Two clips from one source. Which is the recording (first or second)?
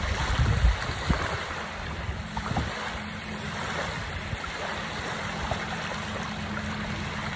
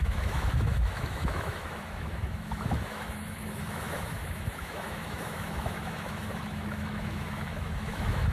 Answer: first